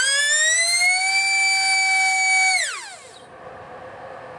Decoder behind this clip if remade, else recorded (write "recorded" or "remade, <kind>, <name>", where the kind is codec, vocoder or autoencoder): recorded